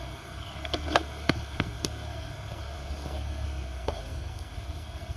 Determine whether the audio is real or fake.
fake